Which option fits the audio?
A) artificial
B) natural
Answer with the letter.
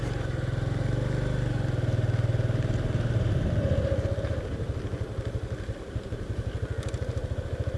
B